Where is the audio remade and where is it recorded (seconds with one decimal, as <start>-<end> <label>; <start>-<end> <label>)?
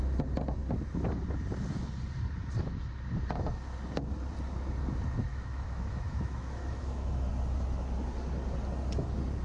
0.0-5.3 recorded; 5.3-7.3 remade; 7.3-9.4 recorded